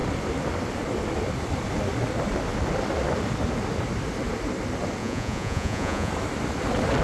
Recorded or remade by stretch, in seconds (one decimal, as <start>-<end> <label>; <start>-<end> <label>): 0.0-5.0 recorded; 5.0-6.1 remade; 6.1-7.0 recorded